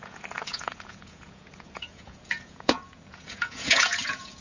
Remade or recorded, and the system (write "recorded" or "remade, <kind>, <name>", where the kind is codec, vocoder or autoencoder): remade, vocoder, Vocos